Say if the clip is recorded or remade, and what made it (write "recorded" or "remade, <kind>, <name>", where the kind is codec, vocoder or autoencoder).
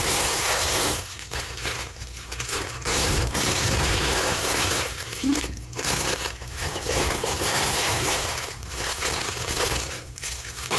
remade, codec, SNAC